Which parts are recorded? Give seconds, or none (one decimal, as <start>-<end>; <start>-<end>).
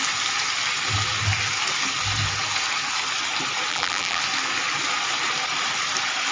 0.0-3.7; 4.2-6.3